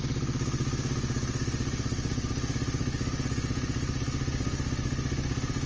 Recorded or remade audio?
recorded